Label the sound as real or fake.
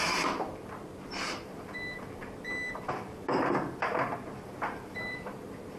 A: fake